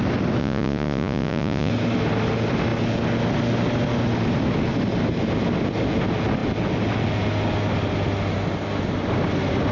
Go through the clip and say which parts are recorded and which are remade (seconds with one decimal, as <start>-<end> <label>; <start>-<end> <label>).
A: 0.0-0.4 recorded; 0.4-1.7 remade; 1.7-9.7 recorded